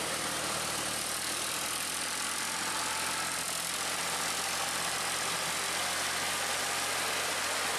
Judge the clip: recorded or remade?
remade